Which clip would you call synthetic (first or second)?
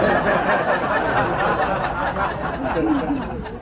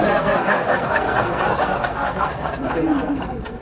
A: second